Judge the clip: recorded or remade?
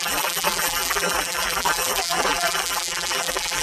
remade